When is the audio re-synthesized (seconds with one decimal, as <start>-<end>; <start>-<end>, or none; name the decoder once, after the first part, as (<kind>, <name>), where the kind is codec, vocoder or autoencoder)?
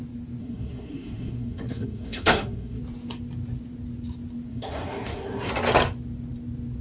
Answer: 0.4-2.8 (codec, SNAC); 4.5-5.5